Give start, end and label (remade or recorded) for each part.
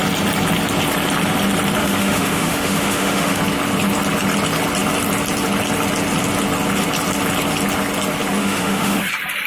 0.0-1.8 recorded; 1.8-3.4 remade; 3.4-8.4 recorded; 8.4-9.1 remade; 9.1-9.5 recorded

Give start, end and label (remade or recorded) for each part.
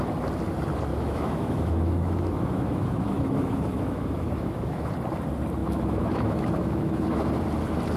0.0-0.9 recorded; 0.9-4.9 remade; 4.9-5.6 recorded; 5.6-7.3 remade; 7.3-8.0 recorded